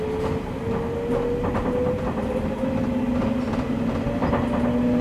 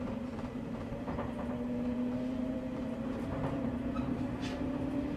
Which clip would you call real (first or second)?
first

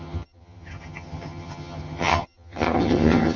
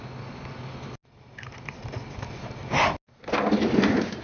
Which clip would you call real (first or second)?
second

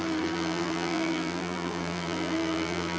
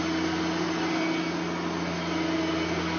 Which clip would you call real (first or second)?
second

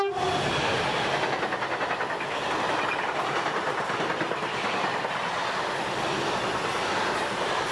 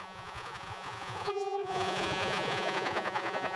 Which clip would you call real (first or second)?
first